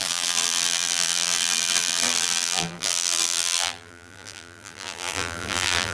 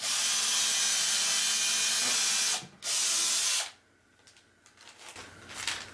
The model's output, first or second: first